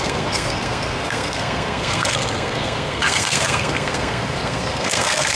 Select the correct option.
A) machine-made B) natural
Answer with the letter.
A